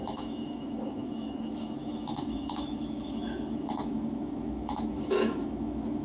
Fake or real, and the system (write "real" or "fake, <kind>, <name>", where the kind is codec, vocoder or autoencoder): fake, autoencoder, DAC-VAE